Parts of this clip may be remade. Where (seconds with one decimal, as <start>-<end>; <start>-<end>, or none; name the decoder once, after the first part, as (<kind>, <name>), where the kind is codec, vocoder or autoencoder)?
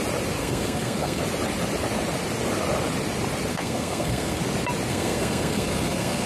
0.4-1.2 (codec, SNAC); 3.5-4.4; 4.9-6.3